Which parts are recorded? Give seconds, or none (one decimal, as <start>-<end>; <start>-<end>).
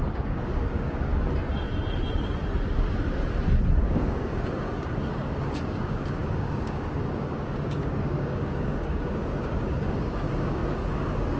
1.1-3.8